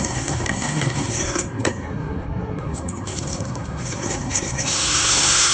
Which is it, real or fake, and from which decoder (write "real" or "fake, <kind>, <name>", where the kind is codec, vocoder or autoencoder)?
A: fake, codec, SNAC